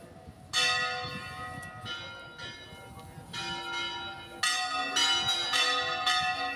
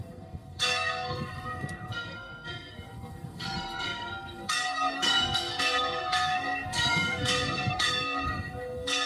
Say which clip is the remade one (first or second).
second